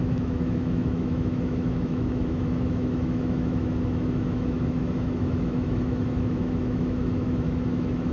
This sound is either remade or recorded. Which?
remade